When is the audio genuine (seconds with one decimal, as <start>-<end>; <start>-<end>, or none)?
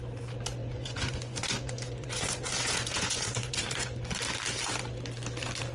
0.0-0.6; 4.0-5.7